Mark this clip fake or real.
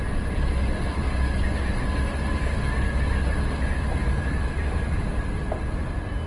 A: real